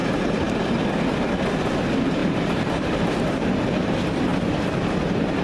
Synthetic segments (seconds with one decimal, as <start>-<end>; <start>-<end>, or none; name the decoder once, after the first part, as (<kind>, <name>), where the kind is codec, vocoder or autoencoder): 0.0-0.7 (vocoder, BigVGAN v2); 2.2-3.6; 4.3-5.4